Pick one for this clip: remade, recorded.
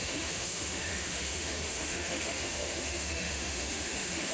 remade